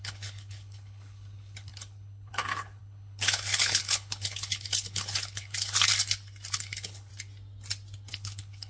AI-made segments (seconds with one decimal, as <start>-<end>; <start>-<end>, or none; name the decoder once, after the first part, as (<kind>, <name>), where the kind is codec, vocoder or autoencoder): 0.0-5.9 (codec, HILCodec); 6.5-7.1; 8.1-8.7